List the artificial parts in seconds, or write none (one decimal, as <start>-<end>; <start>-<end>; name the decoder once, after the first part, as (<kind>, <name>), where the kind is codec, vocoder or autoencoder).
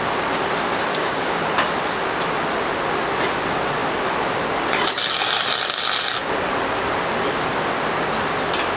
0.9-1.4 (codec, DAC)